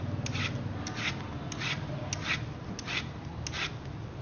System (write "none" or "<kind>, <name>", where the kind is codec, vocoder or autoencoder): none